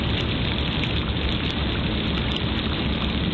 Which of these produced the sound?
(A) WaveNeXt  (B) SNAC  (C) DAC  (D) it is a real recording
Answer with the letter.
D